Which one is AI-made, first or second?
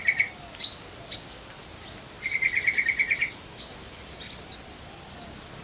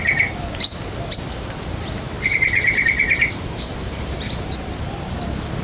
second